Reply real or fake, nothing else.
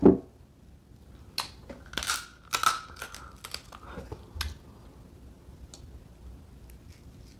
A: real